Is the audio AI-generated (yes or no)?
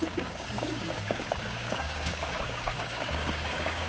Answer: yes